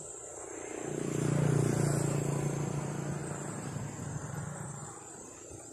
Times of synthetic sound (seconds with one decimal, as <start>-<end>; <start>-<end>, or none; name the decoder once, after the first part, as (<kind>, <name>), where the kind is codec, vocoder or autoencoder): none